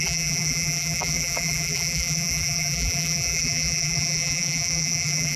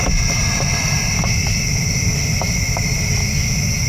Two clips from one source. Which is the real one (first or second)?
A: second